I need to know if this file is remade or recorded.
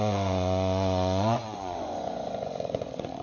remade